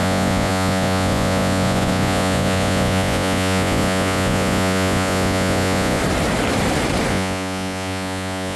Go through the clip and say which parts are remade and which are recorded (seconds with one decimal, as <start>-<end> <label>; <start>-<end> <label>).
0.0-6.0 remade; 6.0-7.1 recorded; 7.1-8.6 remade